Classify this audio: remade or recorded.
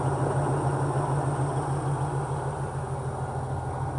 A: recorded